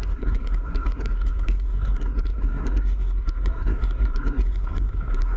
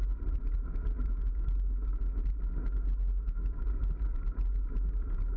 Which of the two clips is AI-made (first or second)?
first